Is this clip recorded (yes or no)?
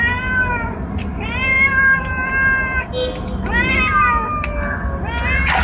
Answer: yes